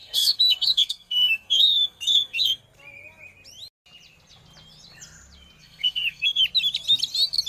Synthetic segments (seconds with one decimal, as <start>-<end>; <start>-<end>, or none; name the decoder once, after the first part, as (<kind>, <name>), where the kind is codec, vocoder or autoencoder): 0.0-2.6 (codec, SNAC); 5.6-6.4